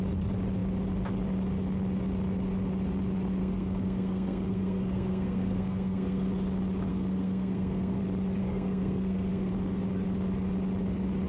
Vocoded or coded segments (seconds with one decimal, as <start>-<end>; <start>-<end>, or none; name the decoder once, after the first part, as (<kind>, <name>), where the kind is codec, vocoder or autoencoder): 3.4-6.3 (codec, SNAC); 6.9-8.0; 8.4-9.5